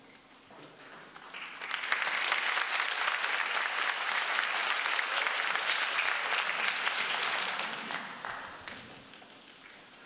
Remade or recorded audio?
recorded